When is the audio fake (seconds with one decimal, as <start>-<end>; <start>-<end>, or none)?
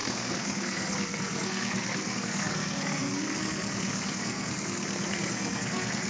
0.0-6.1